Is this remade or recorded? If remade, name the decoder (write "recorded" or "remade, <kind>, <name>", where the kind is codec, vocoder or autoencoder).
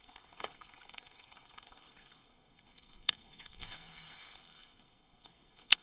remade, codec, SNAC